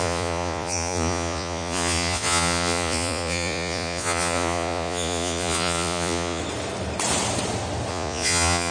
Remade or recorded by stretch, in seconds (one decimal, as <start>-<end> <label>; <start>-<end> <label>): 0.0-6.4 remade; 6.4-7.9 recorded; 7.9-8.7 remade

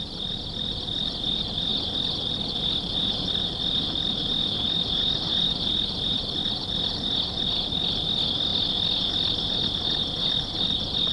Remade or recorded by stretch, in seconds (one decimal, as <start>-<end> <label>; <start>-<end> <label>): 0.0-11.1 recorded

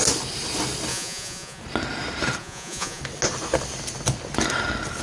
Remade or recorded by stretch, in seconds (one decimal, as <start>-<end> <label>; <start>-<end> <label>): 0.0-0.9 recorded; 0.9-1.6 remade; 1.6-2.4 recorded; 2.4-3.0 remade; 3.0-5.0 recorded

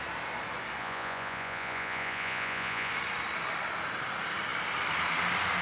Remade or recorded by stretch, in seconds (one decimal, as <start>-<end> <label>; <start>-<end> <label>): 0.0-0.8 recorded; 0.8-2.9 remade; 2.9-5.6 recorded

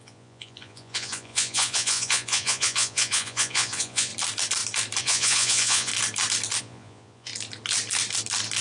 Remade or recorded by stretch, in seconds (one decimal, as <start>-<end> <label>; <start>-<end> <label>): 0.0-4.1 remade; 4.1-5.0 recorded; 5.0-5.9 remade; 5.9-6.6 recorded; 6.6-7.3 remade; 7.3-8.6 recorded

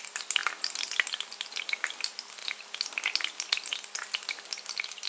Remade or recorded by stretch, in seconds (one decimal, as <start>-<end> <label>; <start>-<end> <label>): 0.0-5.1 recorded

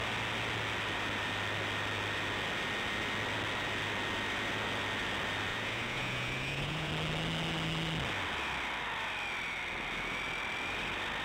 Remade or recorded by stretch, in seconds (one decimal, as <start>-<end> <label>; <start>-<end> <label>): 0.0-5.5 recorded; 5.5-6.9 remade; 6.9-11.2 recorded

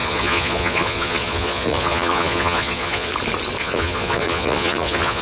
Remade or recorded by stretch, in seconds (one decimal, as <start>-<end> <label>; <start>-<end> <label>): 0.0-3.1 remade; 3.1-3.6 recorded; 3.6-5.2 remade